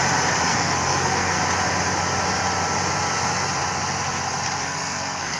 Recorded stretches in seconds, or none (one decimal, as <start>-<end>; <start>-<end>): 0.0-0.5; 1.4-4.6